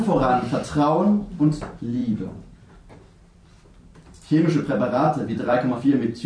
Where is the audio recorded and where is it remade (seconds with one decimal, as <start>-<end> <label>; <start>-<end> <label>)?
0.0-2.0 recorded; 2.0-5.8 remade; 5.8-6.3 recorded